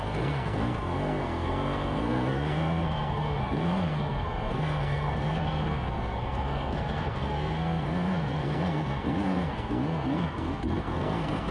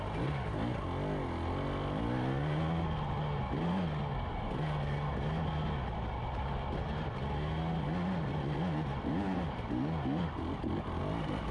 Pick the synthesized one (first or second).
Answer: first